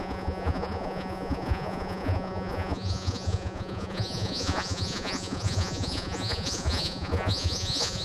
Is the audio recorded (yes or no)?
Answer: no